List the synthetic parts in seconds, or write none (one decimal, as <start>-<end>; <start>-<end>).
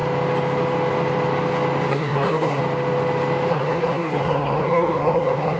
1.9-2.6; 3.5-5.6